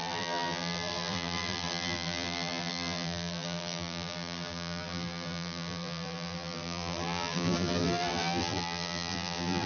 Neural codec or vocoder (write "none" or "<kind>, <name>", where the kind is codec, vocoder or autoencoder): vocoder, BigVGAN v2